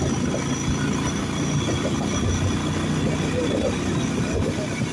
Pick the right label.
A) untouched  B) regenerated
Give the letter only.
A